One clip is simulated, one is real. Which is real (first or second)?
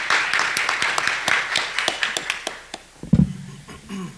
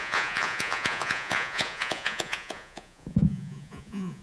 first